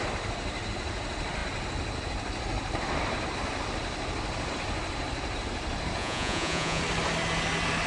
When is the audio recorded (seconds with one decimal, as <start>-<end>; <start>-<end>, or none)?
0.0-6.0; 6.8-7.9